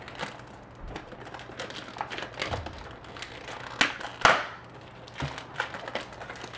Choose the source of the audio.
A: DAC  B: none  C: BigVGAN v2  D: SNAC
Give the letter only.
B